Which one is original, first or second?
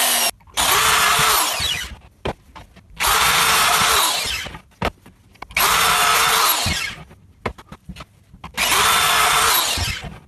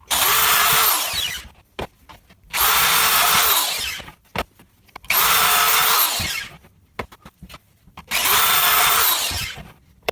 first